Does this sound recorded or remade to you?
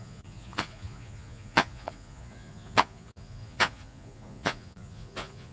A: remade